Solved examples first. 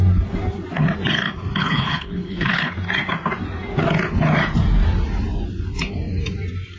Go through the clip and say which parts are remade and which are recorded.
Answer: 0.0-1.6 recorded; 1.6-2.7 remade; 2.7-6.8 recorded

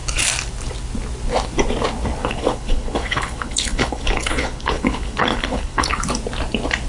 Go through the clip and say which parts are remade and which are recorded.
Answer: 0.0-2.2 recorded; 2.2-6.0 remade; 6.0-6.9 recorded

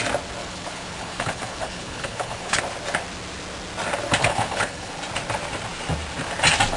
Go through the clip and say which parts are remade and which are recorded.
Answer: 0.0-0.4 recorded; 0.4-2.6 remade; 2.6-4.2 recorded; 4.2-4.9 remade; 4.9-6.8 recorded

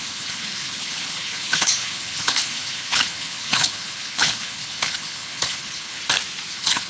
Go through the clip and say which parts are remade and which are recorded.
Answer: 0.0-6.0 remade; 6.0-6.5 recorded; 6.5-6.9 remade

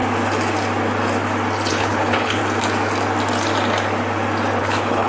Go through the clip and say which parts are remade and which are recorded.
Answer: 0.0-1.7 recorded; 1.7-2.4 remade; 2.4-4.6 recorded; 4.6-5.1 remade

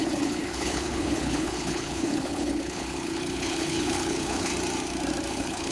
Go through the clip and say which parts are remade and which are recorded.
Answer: 0.0-4.5 remade; 4.5-5.3 recorded; 5.3-5.7 remade

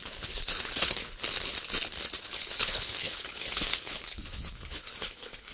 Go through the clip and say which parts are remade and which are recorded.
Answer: 0.0-1.2 remade; 1.2-2.2 recorded; 2.2-5.5 remade

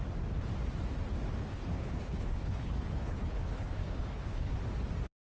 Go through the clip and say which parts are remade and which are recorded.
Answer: 0.0-1.4 recorded; 1.4-4.5 remade; 4.5-5.2 recorded